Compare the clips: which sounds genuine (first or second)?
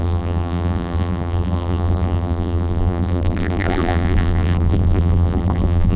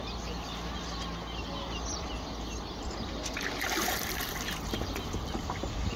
second